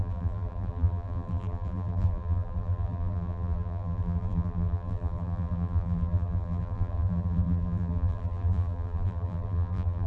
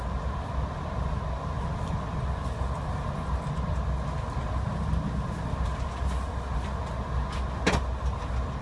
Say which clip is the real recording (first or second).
second